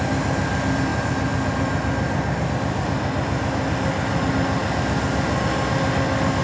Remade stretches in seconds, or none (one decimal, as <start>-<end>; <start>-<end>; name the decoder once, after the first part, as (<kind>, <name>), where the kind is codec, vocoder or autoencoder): none

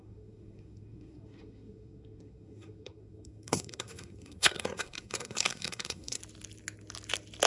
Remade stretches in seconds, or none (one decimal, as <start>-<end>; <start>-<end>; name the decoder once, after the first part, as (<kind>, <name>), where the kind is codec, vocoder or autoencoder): 0.0-6.2 (codec, SNAC)

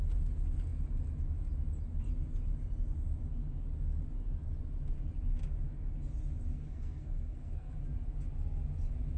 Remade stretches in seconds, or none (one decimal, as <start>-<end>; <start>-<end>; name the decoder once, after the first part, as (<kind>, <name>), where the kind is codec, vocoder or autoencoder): 6.5-7.8 (codec, SNAC)

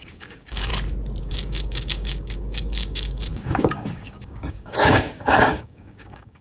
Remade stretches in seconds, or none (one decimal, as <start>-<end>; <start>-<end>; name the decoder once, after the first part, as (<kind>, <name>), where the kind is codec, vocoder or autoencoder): 0.0-0.7 (codec, DAC); 1.2-6.4